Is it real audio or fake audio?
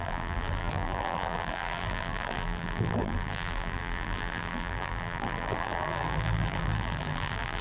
fake